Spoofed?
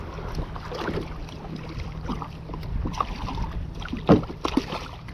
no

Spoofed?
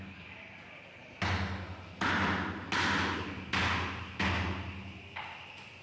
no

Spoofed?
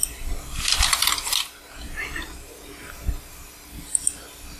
no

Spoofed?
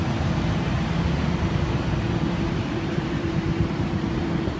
yes